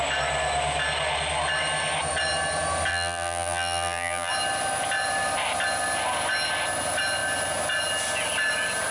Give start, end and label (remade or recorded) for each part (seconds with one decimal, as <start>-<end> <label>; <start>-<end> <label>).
0.0-2.9 recorded; 2.9-4.3 remade; 4.3-8.9 recorded